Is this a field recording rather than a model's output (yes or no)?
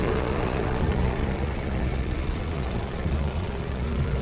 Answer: no